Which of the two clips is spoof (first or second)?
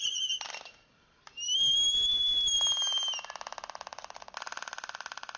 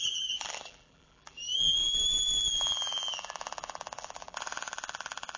second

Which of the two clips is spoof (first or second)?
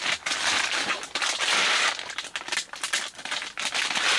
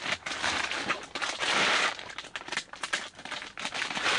second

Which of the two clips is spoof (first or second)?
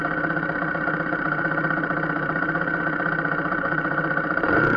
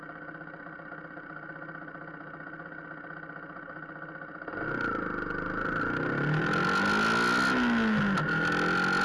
first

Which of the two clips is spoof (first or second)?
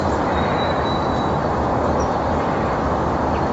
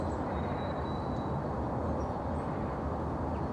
first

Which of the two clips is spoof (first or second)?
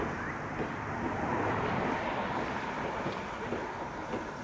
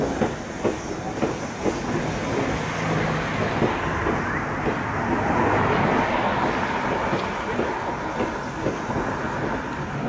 first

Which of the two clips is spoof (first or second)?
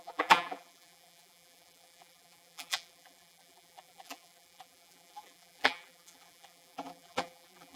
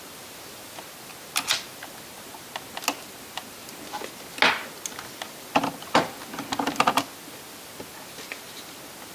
first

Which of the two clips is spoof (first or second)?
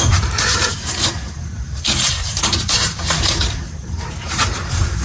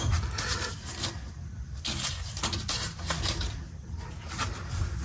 first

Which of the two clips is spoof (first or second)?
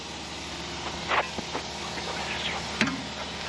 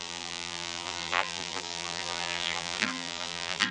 second